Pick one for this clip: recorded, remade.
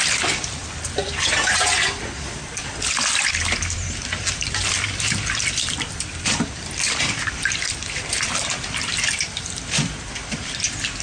remade